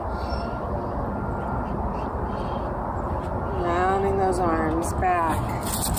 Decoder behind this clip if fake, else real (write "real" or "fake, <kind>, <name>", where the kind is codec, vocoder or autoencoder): real